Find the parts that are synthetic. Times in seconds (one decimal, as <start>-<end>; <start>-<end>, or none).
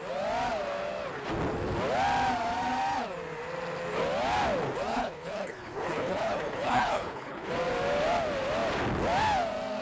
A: 4.9-7.5